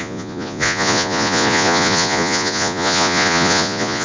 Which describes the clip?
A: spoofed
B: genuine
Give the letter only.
A